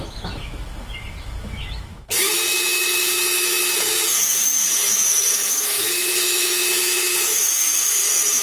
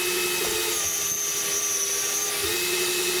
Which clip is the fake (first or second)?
first